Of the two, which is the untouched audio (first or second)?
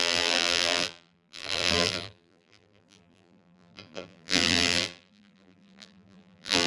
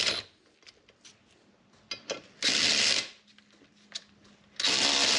second